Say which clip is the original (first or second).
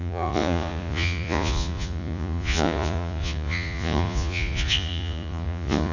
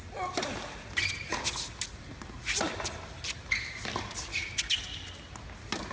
second